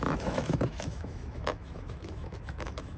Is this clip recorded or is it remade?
remade